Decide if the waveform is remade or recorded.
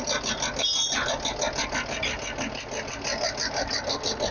recorded